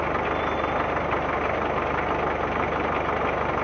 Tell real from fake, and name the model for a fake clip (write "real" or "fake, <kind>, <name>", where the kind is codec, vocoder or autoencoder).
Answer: real